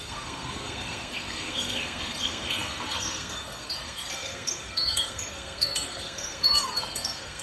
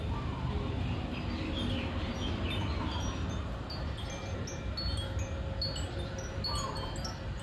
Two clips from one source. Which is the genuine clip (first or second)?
second